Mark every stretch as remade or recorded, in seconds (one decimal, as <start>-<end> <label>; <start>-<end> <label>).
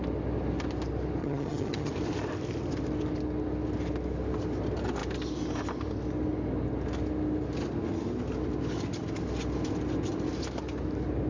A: 0.0-1.2 recorded; 1.2-1.9 remade; 1.9-11.3 recorded